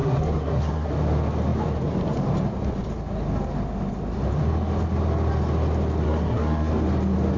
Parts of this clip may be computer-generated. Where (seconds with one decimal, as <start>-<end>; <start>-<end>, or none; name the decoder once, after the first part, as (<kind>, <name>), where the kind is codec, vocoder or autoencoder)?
0.0-0.9 (codec, SNAC); 6.0-6.7